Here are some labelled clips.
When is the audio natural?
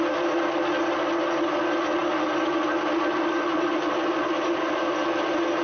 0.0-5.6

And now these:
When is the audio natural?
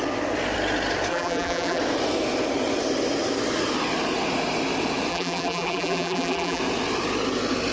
0.0-1.1; 1.8-5.1; 6.6-7.7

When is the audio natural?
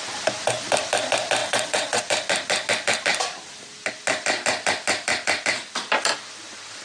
0.0-1.4; 2.0-6.8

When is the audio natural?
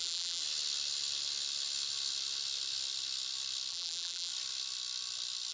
0.4-3.7; 4.3-5.5